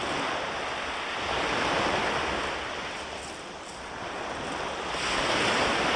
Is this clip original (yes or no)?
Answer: yes